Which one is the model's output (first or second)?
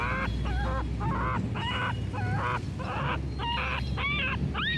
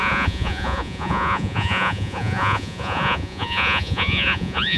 second